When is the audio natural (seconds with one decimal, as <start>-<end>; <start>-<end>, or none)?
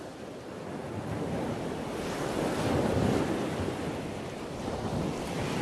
0.0-5.6